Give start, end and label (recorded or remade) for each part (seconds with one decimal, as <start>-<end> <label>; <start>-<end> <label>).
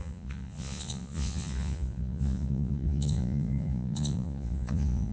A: 0.0-5.1 remade